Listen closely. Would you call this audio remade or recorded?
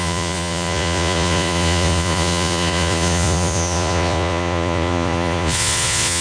remade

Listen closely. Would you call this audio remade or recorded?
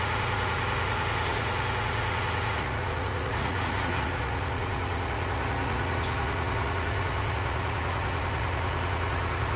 remade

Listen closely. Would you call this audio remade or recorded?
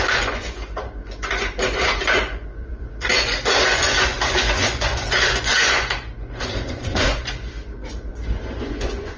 remade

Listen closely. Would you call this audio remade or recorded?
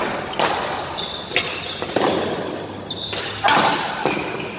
recorded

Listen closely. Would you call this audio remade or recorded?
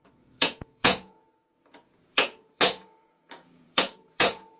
remade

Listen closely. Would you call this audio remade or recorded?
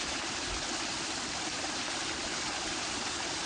recorded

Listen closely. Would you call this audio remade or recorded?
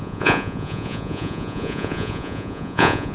remade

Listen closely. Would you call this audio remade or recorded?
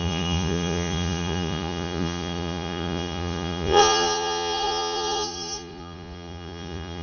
remade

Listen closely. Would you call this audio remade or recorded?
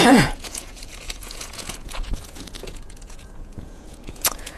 remade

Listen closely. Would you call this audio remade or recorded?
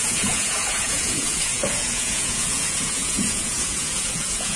remade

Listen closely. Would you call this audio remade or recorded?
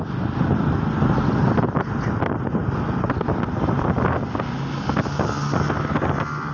recorded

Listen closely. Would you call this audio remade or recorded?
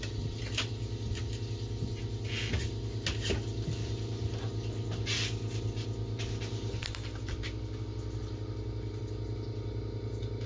recorded